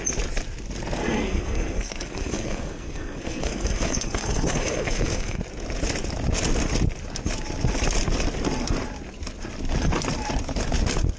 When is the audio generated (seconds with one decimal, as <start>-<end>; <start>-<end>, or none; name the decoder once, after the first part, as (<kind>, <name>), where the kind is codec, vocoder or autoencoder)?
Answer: 1.0-5.4 (codec, SNAC)